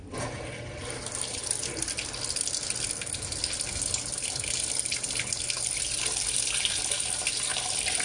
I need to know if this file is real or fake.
real